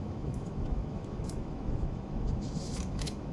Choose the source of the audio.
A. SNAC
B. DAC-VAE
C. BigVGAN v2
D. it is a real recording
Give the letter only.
B